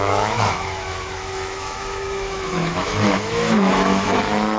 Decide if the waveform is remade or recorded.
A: remade